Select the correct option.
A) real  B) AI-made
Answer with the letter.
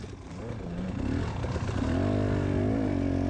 A